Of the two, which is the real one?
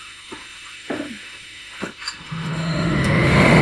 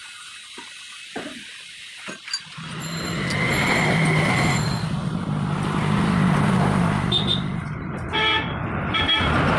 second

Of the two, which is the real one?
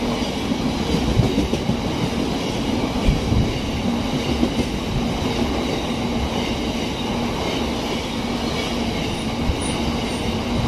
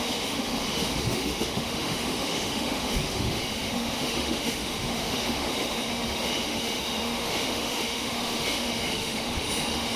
first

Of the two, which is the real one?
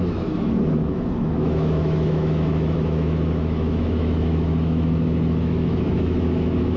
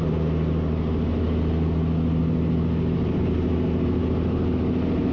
second